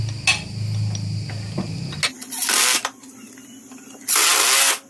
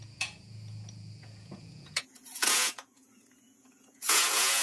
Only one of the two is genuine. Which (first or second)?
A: first